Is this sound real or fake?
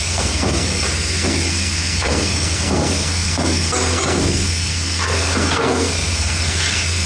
fake